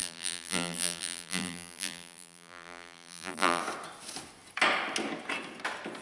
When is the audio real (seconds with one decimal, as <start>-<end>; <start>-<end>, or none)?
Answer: 3.6-6.0